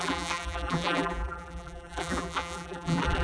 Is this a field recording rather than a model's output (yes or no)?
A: no